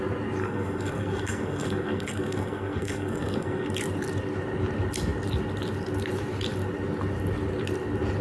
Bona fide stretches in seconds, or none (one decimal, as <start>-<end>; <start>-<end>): 0.0-0.4; 3.7-8.2